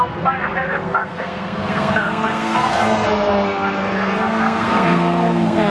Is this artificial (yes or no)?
yes